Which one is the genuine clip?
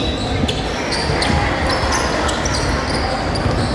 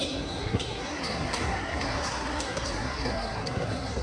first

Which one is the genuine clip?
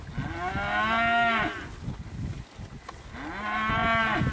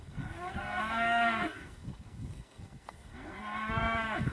first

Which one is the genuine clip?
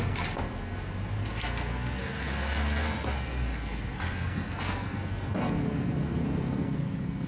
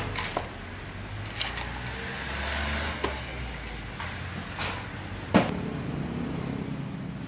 second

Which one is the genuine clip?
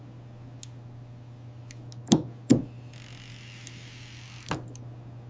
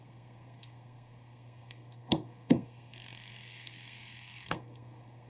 first